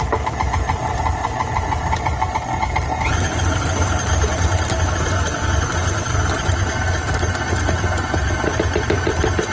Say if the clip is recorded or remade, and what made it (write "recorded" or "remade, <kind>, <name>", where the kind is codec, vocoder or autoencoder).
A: remade, vocoder, BigVGAN v2